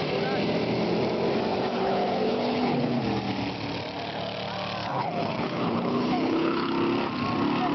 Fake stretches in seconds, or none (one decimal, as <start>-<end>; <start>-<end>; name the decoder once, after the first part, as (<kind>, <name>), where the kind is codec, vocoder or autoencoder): 1.5-3.0 (codec, HILCodec); 4.8-6.7

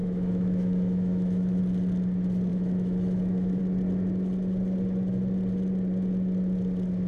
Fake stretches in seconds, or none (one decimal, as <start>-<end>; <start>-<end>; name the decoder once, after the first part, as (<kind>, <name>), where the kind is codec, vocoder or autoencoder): 0.0-1.6 (autoencoder, DAC-VAE); 2.5-3.6

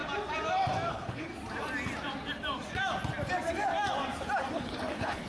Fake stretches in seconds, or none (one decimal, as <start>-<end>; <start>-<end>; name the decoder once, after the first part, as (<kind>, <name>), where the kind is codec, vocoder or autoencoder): 0.9-1.3 (codec, HILCodec); 4.5-5.3

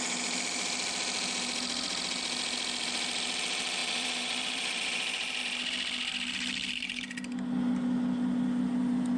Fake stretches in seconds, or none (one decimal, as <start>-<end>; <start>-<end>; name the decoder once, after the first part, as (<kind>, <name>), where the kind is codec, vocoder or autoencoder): 3.8-5.4 (vocoder, BigVGAN v2)

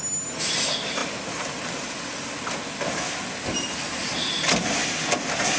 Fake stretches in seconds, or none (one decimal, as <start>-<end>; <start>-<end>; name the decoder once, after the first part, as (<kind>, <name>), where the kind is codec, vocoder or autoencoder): none

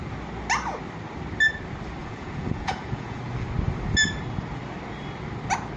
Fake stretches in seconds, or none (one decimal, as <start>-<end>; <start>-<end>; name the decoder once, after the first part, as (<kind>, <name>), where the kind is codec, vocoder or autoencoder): 2.0-3.2 (vocoder, Vocos)

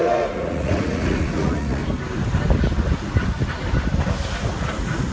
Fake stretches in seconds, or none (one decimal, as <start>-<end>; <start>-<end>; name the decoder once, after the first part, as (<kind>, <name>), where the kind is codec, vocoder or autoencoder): 0.0-1.8 (vocoder, Vocos)

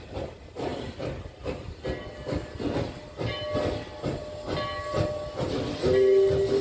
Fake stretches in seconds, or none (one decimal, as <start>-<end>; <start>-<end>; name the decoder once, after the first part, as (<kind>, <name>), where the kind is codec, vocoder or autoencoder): none